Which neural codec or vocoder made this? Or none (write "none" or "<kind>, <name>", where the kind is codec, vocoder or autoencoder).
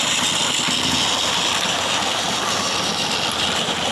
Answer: none